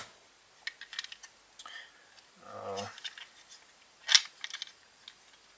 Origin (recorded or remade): recorded